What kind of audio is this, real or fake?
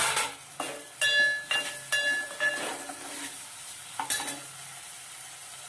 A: real